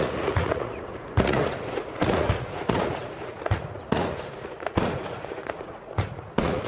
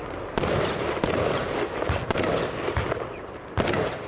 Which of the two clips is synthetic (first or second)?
first